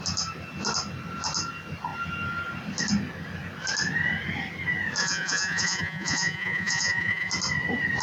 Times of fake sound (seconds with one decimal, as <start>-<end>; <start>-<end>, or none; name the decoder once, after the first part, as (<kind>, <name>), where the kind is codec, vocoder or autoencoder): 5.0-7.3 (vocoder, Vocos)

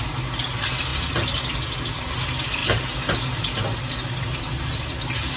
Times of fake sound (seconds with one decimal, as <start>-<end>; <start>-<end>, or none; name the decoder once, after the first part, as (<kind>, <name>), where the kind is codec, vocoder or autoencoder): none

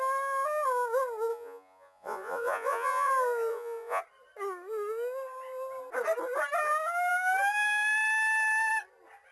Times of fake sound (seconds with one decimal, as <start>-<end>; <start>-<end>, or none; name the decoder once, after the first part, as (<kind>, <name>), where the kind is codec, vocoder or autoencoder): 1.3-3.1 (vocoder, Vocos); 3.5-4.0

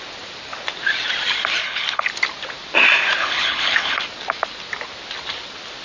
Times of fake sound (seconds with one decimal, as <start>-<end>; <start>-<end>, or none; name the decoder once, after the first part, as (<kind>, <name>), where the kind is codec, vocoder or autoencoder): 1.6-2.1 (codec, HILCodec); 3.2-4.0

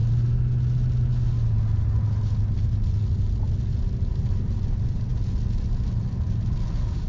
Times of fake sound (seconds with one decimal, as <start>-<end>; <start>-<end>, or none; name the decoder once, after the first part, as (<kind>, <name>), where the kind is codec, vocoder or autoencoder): none